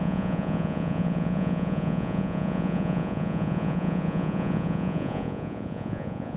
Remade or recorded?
remade